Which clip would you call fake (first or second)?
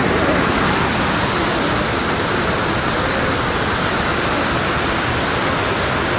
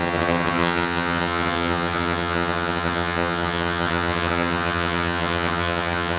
second